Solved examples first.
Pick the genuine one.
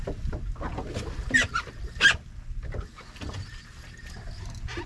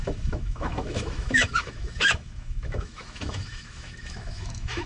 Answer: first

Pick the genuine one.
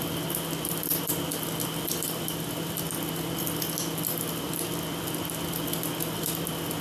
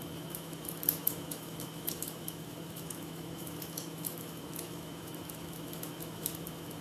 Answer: first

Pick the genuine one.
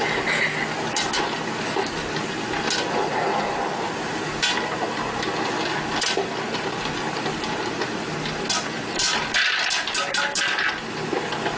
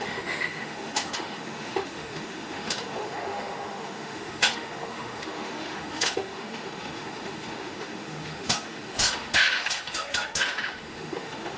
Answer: first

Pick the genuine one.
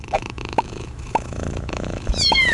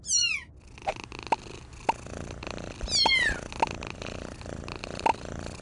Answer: second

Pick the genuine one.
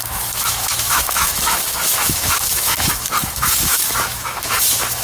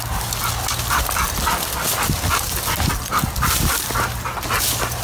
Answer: second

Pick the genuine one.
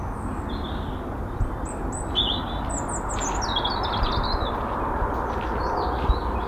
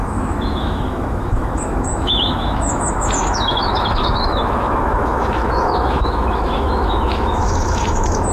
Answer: first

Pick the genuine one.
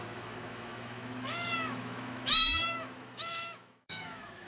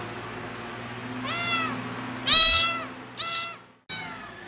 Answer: second